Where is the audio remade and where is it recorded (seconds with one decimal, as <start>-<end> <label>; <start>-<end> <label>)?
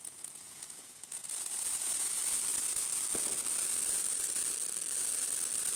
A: 0.0-2.2 remade; 2.2-5.8 recorded